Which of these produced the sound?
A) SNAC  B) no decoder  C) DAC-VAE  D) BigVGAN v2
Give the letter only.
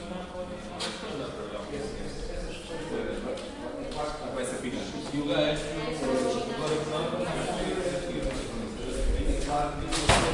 B